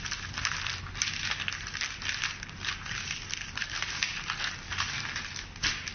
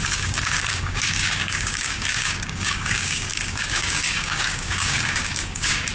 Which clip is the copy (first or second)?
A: second